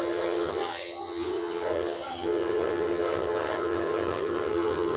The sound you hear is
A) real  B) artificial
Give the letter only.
B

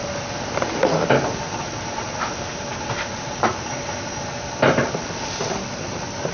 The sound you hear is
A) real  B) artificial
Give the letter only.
A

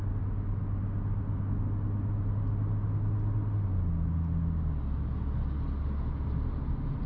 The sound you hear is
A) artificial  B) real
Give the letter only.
B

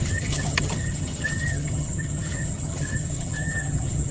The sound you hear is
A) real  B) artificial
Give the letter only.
B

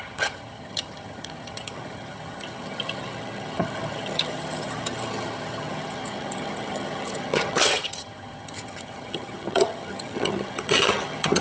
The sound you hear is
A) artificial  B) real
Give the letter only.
A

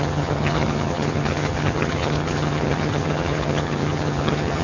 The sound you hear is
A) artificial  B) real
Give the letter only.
A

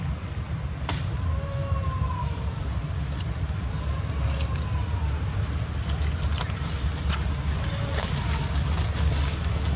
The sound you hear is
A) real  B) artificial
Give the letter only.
A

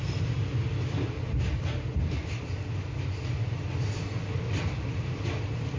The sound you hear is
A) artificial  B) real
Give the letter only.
B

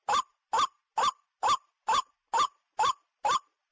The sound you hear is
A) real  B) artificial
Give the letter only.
A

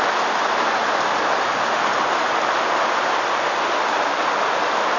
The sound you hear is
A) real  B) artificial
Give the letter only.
A